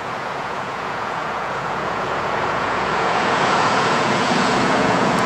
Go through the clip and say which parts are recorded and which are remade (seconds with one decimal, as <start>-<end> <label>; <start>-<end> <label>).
0.0-5.3 remade

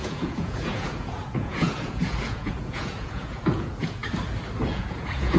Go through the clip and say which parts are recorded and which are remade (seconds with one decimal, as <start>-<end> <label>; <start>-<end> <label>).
0.0-4.0 remade; 4.0-4.7 recorded; 4.7-5.4 remade

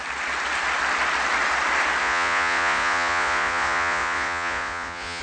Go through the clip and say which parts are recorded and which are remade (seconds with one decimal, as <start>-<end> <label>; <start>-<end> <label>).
0.0-2.0 recorded; 2.0-5.2 remade

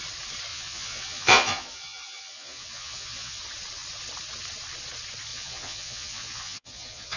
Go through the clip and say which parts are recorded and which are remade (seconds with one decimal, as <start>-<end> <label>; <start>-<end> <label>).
0.0-0.5 recorded; 0.5-3.4 remade; 3.4-5.3 recorded; 5.3-7.2 remade

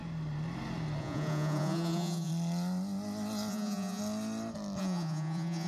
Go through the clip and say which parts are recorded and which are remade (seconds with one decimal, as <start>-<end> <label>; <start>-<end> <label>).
0.0-1.0 recorded; 1.0-2.3 remade; 2.3-3.5 recorded; 3.5-4.0 remade; 4.0-4.8 recorded; 4.8-5.7 remade

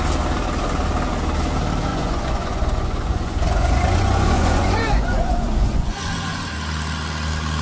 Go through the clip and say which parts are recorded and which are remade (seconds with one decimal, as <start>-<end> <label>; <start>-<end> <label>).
0.0-1.9 recorded; 1.9-6.5 remade; 6.5-7.6 recorded